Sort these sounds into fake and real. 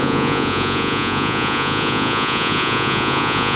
fake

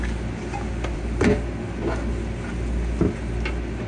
real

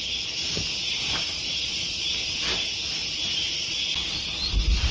real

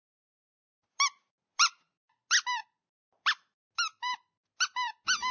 real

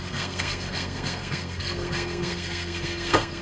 fake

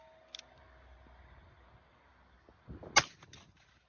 real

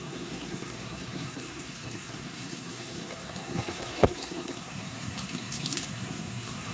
fake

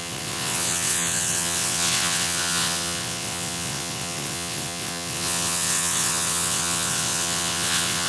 fake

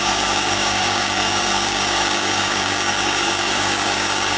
fake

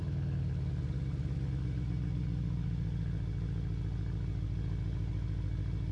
real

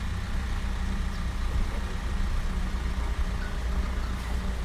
real